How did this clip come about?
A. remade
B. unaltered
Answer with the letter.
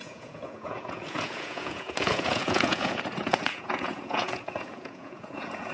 A